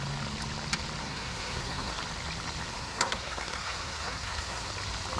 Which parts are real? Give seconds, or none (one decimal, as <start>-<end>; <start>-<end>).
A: 0.0-1.0; 1.9-2.8; 4.7-5.2